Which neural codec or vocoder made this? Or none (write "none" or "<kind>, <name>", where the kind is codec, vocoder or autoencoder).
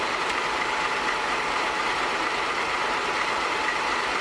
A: vocoder, BigVGAN v2